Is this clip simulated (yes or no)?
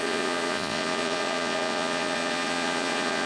yes